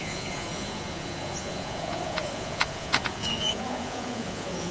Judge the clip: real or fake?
fake